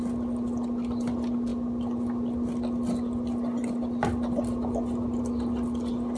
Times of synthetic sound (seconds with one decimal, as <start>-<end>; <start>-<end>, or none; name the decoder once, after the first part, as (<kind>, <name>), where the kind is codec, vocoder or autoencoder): none